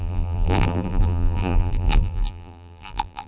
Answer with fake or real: fake